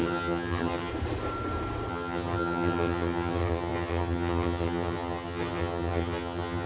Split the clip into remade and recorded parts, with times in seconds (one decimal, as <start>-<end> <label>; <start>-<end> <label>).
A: 0.0-0.9 remade; 0.9-1.9 recorded; 1.9-6.7 remade

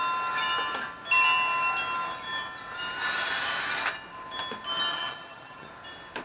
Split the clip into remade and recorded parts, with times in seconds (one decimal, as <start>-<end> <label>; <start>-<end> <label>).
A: 0.0-4.9 recorded; 4.9-5.7 remade; 5.7-6.2 recorded

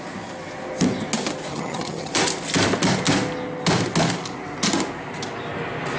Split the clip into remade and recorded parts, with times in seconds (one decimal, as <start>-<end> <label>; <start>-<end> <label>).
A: 0.0-1.5 recorded; 1.5-2.1 remade; 2.1-6.0 recorded

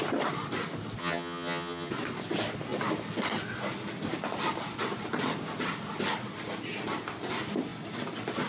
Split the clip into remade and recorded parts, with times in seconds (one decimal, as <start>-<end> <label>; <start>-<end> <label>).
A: 0.0-1.0 recorded; 1.0-1.9 remade; 1.9-8.5 recorded

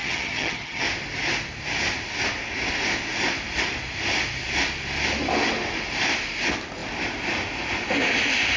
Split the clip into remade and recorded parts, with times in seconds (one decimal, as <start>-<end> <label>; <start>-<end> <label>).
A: 0.0-0.8 remade; 0.8-8.6 recorded

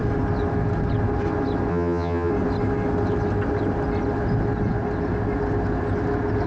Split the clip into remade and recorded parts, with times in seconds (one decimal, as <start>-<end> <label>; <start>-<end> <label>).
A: 0.0-1.7 recorded; 1.7-2.3 remade; 2.3-6.5 recorded

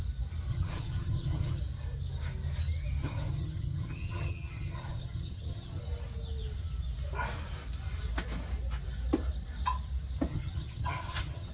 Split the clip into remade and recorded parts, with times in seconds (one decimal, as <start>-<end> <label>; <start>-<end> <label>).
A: 0.0-0.5 recorded; 0.5-1.6 remade; 1.6-3.0 recorded; 3.0-5.8 remade; 5.8-10.3 recorded; 10.3-11.5 remade